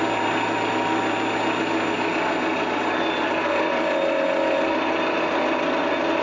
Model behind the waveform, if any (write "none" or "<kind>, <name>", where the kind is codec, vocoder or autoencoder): none